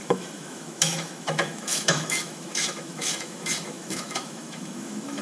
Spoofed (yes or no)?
yes